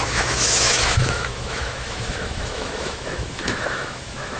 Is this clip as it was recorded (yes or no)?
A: no